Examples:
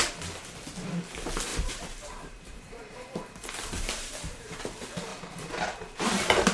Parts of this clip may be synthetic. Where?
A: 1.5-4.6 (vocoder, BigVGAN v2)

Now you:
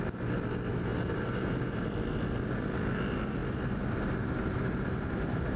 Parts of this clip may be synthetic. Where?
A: 0.9-1.8 (vocoder, BigVGAN v2)

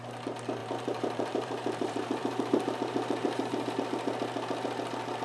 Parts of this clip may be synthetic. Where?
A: 0.6-3.7 (vocoder, BigVGAN v2)